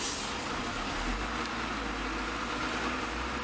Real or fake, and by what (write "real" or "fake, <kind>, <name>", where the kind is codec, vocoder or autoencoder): real